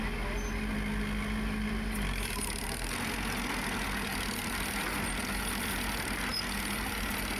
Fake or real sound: real